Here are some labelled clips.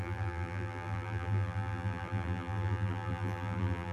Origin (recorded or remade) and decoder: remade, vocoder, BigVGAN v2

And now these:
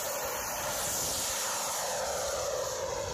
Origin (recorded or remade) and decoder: remade, vocoder, BigVGAN v2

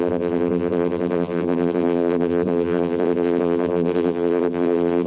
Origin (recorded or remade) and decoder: remade, vocoder, BigVGAN v2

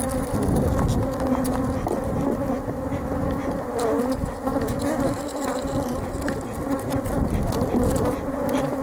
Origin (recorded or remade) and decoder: recorded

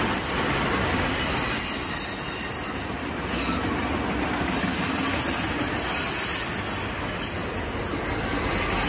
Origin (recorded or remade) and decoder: recorded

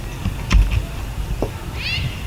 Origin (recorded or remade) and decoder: recorded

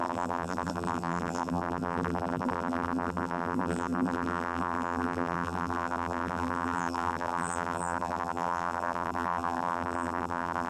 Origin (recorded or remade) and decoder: remade, vocoder, BigVGAN v2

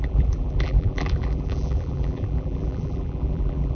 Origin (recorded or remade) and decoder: remade, vocoder, BigVGAN v2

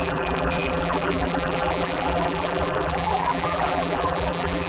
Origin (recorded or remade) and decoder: remade, vocoder, BigVGAN v2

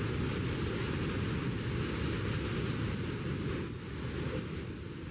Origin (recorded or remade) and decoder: recorded